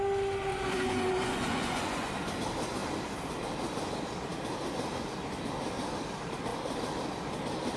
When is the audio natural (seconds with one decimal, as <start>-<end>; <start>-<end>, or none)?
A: 0.0-0.5; 2.1-7.8